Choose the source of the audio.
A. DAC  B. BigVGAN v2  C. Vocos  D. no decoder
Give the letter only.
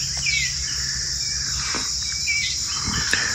D